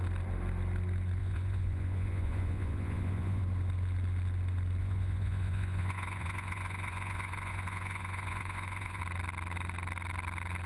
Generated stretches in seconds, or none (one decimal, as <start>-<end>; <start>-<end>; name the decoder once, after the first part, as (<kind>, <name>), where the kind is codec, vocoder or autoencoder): 1.2-3.4 (vocoder, Vocos); 4.8-9.0